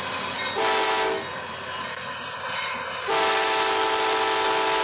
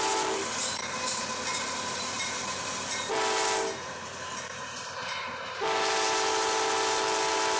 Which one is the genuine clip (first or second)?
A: first